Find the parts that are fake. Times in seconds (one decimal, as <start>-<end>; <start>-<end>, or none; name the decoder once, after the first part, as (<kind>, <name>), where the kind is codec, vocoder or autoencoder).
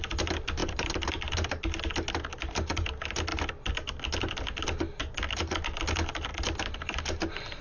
none